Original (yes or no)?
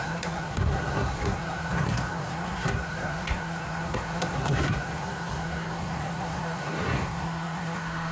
no